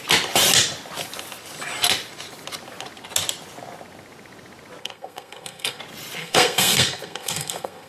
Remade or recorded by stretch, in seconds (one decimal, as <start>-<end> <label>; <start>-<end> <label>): 0.0-4.8 recorded; 4.8-5.8 remade; 5.8-6.2 recorded; 6.2-7.9 remade